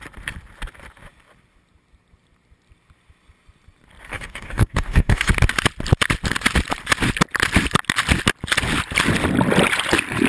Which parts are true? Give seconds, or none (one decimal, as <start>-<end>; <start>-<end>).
0.0-4.1; 5.3-10.3